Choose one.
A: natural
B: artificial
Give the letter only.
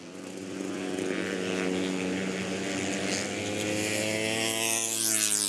A